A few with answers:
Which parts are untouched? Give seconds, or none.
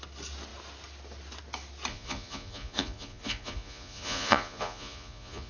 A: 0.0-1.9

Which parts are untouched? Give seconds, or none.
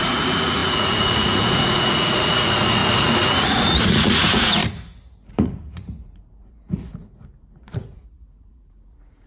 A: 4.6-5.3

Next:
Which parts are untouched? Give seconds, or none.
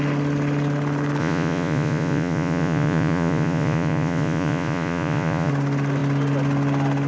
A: 0.0-1.2; 5.5-7.1